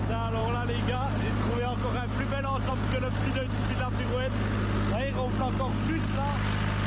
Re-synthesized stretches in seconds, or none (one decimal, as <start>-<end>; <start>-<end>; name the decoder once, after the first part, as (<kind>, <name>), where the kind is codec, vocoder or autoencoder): none